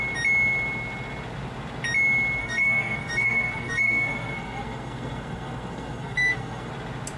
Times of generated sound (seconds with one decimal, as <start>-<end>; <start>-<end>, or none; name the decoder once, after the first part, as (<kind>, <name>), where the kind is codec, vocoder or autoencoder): 2.4-6.7 (codec, SNAC)